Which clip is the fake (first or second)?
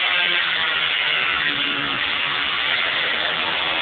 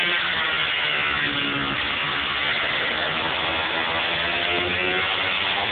first